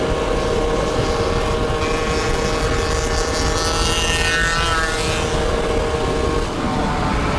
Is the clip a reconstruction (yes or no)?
no